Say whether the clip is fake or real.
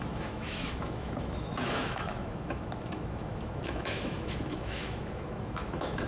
fake